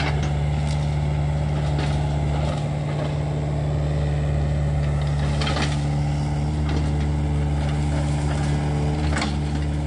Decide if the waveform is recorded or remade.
recorded